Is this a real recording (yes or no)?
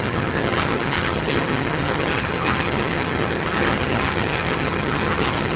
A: no